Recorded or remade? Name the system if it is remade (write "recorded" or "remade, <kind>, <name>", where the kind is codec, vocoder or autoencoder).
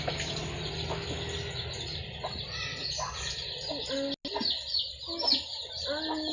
recorded